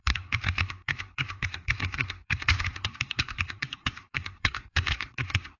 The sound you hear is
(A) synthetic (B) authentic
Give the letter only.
A